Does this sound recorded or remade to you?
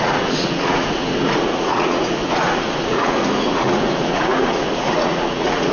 remade